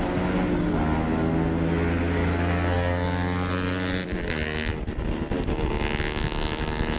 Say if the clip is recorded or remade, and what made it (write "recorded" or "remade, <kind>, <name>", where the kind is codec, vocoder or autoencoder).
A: recorded